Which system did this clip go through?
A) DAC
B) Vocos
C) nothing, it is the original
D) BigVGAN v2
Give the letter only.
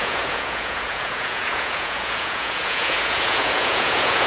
B